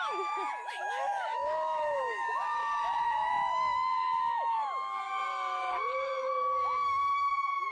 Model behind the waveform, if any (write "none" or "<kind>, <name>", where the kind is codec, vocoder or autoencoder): autoencoder, DAC-VAE